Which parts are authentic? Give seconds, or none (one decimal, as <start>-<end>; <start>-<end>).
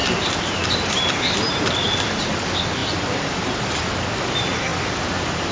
0.0-5.5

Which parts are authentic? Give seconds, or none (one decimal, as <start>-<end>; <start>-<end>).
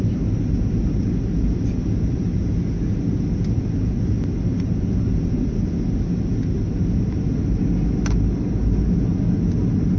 0.0-10.0